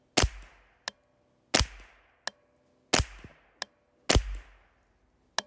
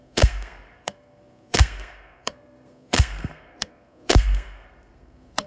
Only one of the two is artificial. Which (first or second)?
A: second